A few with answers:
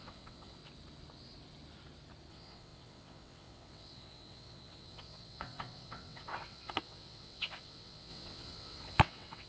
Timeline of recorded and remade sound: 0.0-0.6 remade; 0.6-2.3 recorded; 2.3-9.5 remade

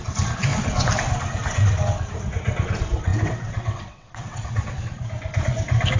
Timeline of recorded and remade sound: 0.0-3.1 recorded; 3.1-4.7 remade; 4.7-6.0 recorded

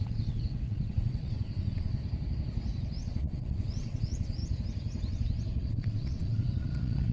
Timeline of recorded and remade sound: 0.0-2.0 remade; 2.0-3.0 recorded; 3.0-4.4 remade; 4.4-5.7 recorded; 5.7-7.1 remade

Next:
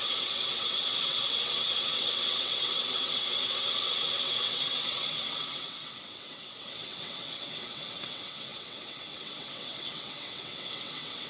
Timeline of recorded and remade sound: 0.0-11.3 remade